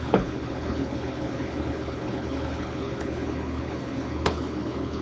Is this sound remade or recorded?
remade